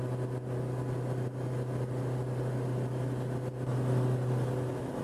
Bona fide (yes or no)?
yes